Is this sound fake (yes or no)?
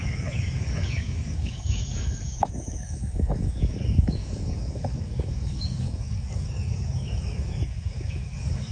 yes